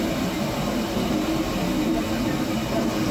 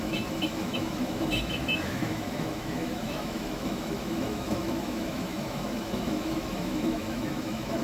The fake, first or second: second